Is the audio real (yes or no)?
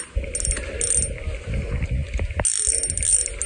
yes